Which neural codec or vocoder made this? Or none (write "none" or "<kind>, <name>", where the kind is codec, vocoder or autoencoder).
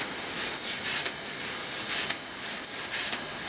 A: none